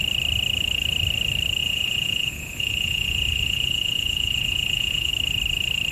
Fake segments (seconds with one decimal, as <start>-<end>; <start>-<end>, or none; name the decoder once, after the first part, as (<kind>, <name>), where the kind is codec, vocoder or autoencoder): 1.6-5.1 (vocoder, Vocos)